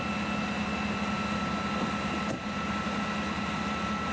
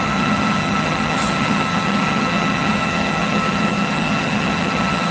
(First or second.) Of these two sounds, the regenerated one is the second